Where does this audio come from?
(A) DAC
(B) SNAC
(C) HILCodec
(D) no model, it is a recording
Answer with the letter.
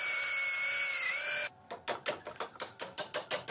D